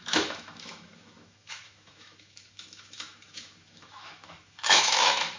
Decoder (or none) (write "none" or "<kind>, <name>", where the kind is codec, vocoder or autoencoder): autoencoder, DAC-VAE